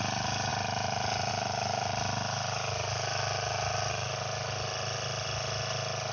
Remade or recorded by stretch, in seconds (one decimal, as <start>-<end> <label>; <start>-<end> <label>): 0.0-6.1 recorded